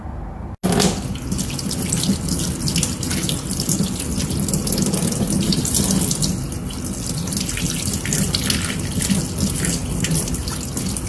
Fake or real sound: real